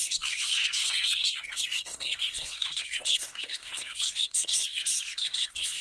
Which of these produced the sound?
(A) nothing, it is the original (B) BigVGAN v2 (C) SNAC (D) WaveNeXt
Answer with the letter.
C